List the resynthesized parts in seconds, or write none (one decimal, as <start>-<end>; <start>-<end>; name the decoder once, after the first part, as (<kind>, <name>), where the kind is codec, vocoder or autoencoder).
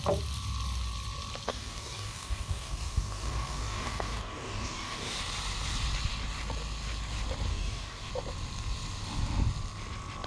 1.5-5.2 (codec, DAC); 7.5-8.1